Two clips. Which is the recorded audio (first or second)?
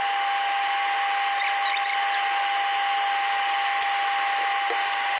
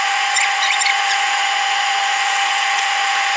first